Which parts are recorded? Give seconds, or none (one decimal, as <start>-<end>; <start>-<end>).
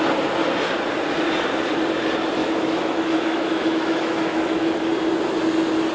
0.0-2.4; 4.9-5.9